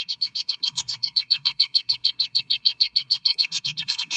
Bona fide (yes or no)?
no